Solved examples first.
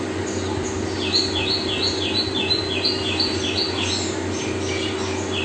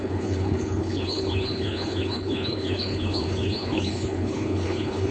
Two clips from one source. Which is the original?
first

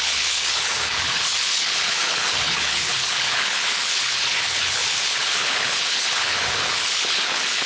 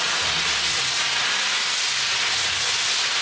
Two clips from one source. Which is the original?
second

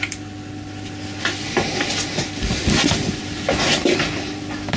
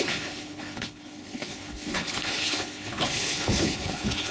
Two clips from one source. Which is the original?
first